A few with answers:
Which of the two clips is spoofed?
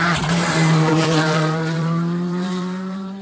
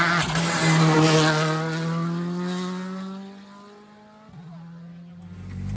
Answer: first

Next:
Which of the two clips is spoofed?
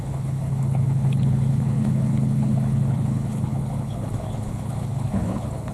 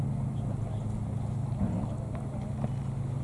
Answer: first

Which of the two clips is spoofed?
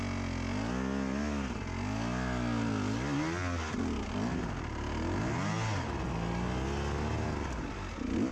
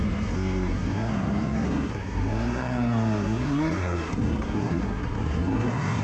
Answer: second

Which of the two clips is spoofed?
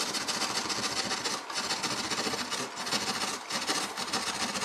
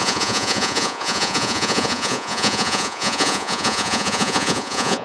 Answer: second